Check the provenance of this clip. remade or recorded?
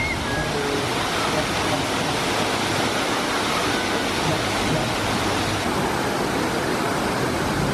recorded